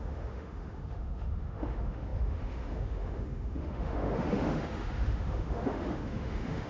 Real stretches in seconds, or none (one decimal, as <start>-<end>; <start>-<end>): none